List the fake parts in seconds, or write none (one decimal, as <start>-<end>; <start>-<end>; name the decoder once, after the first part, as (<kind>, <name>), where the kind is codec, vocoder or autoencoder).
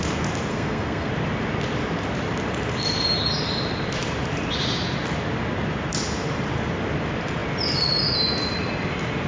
0.5-1.1 (codec, SNAC)